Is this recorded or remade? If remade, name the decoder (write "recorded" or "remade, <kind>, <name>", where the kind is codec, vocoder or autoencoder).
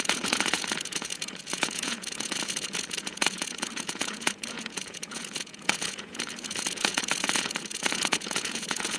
remade, vocoder, Vocos